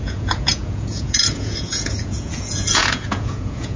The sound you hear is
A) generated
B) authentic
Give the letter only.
A